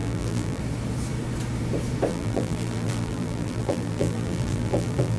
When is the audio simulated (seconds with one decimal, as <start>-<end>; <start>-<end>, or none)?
0.0-0.6; 2.1-5.2